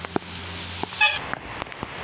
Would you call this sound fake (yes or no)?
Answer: no